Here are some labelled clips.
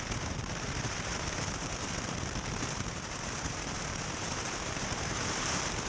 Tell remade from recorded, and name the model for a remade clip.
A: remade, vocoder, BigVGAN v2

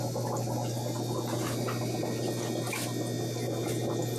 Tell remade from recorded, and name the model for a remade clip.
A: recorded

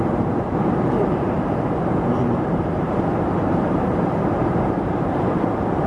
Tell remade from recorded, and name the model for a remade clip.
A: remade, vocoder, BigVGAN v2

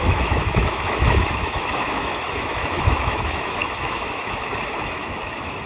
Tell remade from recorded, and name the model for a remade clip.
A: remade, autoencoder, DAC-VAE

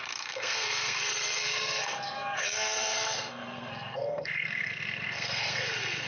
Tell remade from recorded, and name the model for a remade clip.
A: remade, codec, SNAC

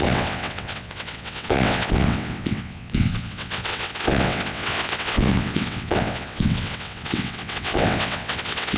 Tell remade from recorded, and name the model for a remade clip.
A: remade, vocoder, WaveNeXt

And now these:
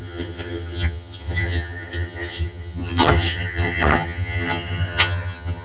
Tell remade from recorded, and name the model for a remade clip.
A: remade, vocoder, HiFi-GAN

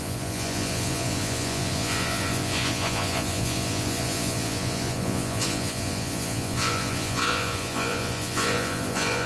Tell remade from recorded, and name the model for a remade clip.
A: remade, vocoder, Vocos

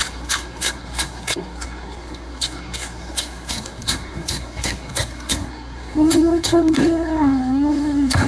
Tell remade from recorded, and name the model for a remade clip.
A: remade, codec, SNAC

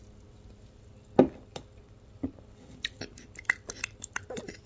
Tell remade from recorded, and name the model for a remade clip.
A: recorded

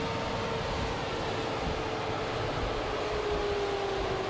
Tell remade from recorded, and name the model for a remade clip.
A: recorded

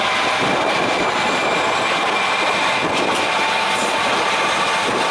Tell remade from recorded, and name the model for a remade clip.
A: recorded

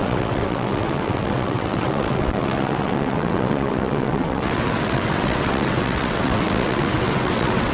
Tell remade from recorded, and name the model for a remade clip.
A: remade, vocoder, WaveNeXt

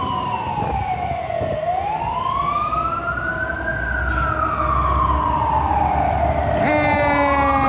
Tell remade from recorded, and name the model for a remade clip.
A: recorded